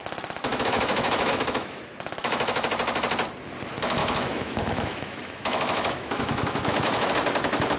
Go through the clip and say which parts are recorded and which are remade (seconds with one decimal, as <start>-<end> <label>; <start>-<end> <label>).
0.0-0.5 recorded; 0.5-1.8 remade; 1.8-2.2 recorded; 2.2-2.7 remade; 2.7-4.0 recorded; 4.0-7.1 remade; 7.1-7.8 recorded